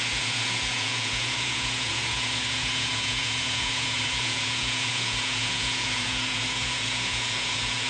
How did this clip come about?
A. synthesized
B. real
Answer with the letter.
A